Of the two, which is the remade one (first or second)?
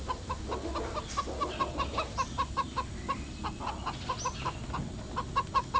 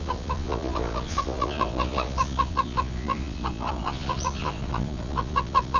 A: second